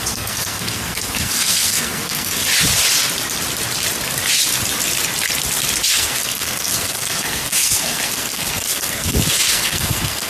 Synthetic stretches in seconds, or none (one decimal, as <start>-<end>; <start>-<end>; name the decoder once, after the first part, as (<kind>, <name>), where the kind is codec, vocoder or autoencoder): 0.0-2.4 (codec, SNAC); 5.9-10.3

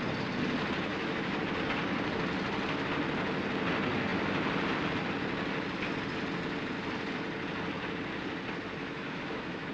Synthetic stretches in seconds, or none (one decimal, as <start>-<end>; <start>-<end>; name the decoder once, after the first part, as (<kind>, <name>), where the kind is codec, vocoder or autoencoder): 0.9-1.4 (autoencoder, DAC-VAE); 8.8-9.7

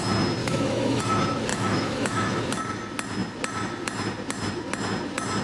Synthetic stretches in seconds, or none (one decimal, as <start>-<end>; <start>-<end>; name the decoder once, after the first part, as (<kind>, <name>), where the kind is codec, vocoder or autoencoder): 0.4-1.0 (autoencoder, DAC-VAE); 1.5-2.4

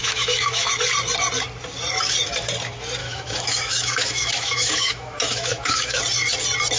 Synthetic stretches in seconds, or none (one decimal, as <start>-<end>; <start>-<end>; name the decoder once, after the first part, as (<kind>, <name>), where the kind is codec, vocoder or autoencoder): 0.0-0.7 (autoencoder, DAC-VAE); 3.0-6.0

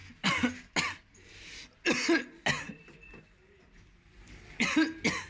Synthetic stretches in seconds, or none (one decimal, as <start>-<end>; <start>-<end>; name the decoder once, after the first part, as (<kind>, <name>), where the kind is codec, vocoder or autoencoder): none

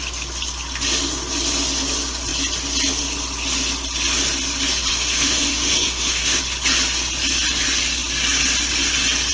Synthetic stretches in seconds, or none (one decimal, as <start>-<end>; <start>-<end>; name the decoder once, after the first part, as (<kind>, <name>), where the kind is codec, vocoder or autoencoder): 4.9-6.4 (autoencoder, DAC-VAE)

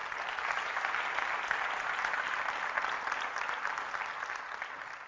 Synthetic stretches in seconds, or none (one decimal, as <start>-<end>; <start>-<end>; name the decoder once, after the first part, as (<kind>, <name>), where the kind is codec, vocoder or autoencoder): none